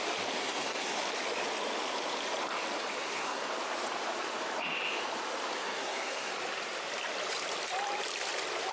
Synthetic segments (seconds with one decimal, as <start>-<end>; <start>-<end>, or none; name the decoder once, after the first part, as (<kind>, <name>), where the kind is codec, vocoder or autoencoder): 0.4-1.0 (codec, SNAC); 3.0-3.5; 5.6-6.3